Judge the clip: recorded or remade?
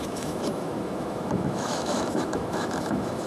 remade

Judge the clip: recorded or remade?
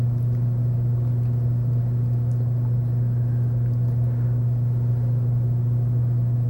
recorded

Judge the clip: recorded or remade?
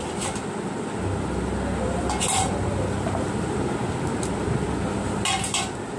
recorded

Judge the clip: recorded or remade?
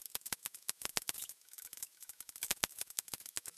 remade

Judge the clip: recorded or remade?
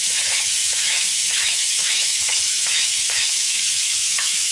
remade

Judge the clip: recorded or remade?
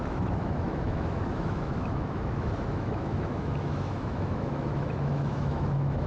remade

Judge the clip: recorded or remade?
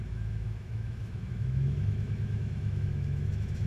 remade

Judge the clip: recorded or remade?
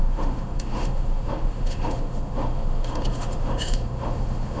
remade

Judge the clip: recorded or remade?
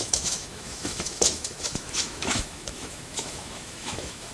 remade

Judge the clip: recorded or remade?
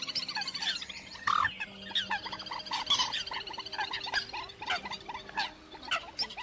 recorded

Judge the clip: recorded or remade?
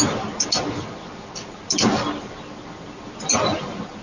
recorded